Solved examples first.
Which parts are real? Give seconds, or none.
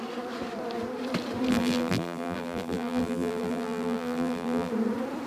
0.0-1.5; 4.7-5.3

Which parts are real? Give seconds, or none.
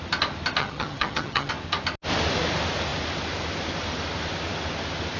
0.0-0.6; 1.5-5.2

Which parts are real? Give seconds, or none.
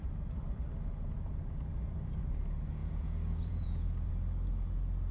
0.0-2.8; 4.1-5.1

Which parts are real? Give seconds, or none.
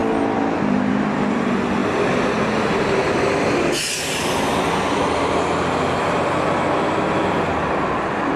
0.0-8.4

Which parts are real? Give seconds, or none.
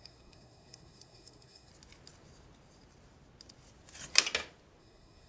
1.7-4.8